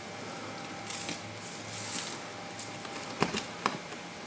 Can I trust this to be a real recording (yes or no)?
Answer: yes